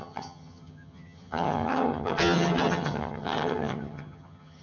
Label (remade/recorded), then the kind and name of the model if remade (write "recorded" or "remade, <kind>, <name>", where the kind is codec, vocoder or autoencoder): remade, vocoder, HiFi-GAN